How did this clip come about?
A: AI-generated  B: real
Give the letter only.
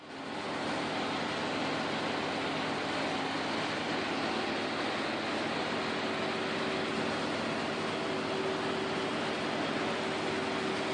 B